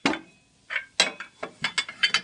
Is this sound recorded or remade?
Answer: recorded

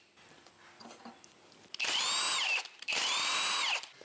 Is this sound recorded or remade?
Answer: recorded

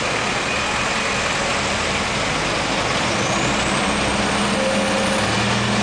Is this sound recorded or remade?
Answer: recorded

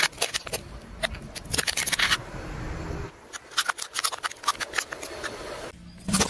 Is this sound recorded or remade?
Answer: recorded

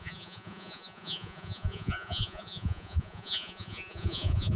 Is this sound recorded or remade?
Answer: remade